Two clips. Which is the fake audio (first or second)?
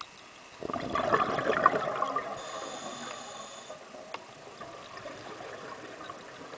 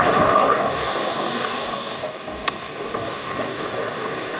second